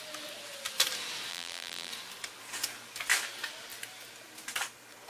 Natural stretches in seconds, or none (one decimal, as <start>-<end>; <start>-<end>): 0.0-1.3; 1.9-5.1